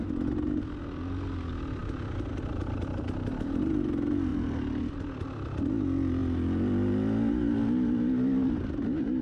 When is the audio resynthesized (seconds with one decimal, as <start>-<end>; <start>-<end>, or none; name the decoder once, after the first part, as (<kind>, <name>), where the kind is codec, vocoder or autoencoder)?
none